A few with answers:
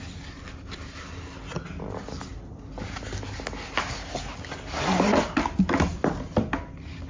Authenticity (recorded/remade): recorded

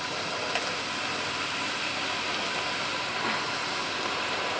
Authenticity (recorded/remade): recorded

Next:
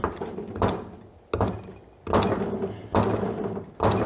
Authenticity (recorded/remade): recorded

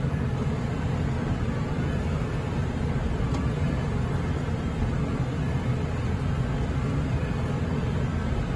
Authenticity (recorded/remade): recorded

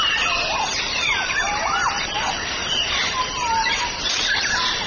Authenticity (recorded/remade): remade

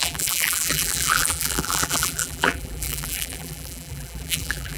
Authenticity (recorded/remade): remade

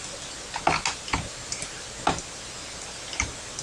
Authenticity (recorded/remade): recorded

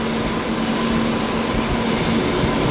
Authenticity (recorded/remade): recorded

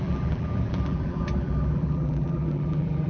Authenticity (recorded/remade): remade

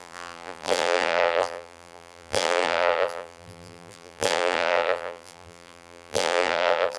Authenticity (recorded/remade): remade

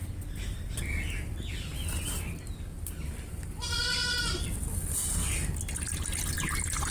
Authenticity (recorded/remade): recorded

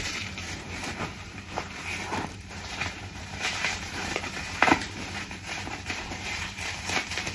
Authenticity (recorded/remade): remade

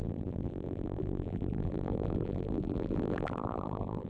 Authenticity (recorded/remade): remade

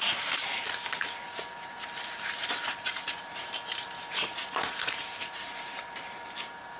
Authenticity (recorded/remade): remade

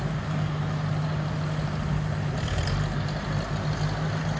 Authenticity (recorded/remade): recorded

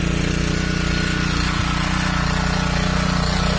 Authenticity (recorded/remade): recorded